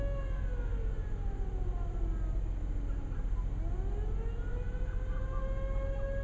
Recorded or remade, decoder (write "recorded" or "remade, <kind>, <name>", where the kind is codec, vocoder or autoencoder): recorded